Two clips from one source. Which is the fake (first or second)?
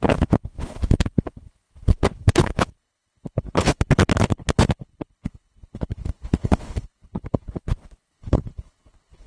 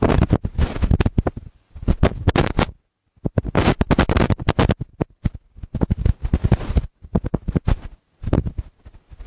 first